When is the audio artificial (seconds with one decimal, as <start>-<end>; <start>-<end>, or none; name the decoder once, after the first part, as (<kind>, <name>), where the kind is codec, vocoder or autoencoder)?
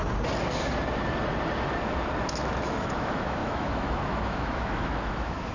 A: 2.2-5.5 (autoencoder, DAC-VAE)